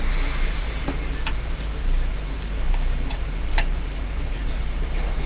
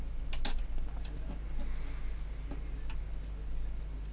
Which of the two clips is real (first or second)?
second